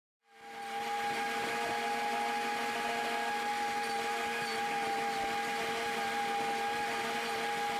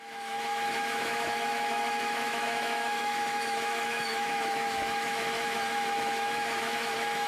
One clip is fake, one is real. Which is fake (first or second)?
second